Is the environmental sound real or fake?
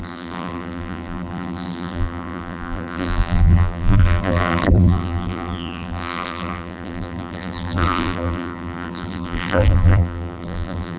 fake